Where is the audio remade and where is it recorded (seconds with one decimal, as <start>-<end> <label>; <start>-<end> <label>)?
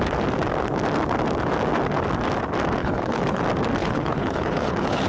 0.0-2.8 recorded; 2.8-3.4 remade; 3.4-3.8 recorded; 3.8-5.1 remade